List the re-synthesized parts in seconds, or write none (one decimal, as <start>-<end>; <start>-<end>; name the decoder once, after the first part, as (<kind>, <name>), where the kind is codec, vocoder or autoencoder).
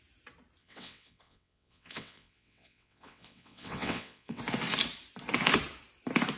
0.6-4.4 (vocoder, WaveNeXt)